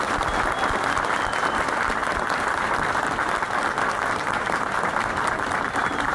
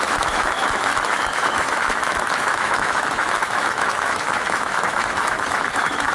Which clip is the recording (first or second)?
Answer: first